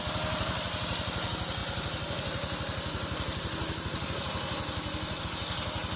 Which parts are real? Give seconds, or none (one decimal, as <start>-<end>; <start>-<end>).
0.0-6.0